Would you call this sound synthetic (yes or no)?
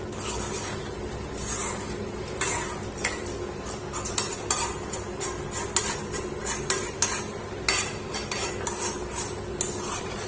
no